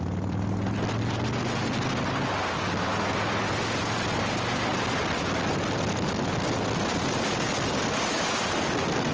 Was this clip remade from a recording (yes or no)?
no